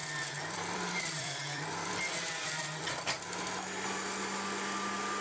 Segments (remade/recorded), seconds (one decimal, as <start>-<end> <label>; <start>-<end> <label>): 0.0-2.9 remade; 2.9-5.2 recorded